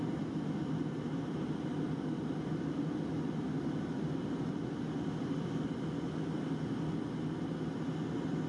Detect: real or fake real